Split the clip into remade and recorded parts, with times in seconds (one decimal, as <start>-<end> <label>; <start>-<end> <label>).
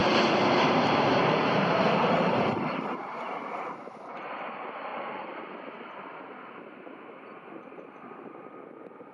0.0-3.9 remade; 3.9-4.9 recorded; 4.9-5.5 remade; 5.5-9.1 recorded